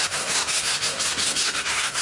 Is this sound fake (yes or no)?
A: yes